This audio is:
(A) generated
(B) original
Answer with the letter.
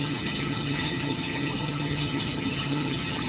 A